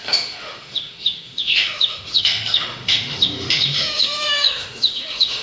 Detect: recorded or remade remade